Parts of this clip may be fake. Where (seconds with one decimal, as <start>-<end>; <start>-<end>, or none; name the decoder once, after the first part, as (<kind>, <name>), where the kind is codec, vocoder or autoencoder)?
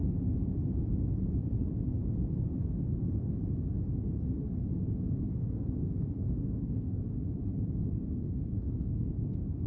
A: 5.3-7.0 (codec, SNAC); 8.2-9.1